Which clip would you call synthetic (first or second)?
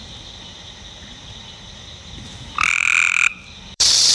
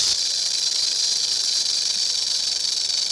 first